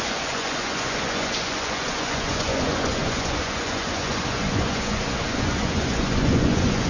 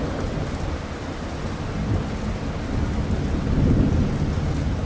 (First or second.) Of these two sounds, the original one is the second